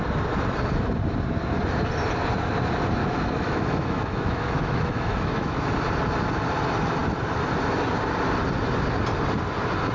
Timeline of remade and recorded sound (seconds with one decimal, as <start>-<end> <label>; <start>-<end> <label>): 0.0-3.0 recorded; 3.0-5.7 remade; 5.7-9.9 recorded